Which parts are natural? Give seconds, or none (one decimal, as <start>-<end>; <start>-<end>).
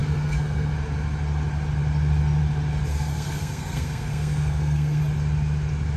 0.7-2.9; 5.0-6.0